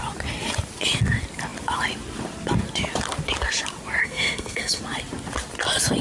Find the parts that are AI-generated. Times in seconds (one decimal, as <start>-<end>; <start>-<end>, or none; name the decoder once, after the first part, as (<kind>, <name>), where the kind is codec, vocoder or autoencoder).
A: 4.0-4.8 (codec, SNAC)